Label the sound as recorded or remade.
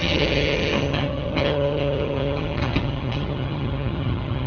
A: remade